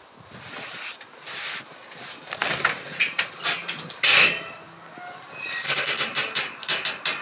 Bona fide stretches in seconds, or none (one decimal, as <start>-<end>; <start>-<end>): 0.0-7.2